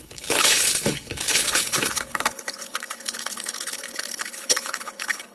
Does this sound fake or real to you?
fake